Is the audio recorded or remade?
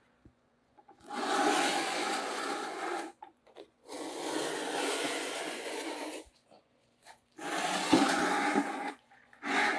remade